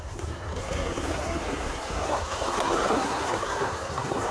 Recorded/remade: remade